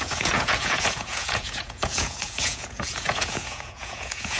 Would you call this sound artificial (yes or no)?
yes